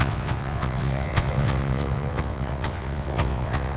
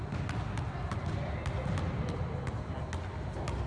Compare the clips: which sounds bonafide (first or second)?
second